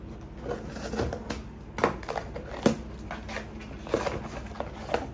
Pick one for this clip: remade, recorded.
recorded